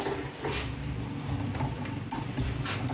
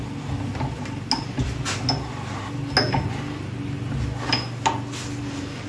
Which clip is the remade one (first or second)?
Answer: first